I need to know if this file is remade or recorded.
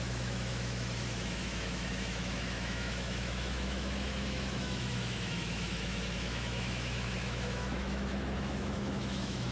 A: remade